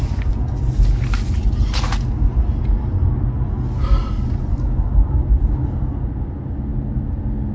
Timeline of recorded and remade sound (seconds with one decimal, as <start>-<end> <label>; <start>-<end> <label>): 0.0-7.5 recorded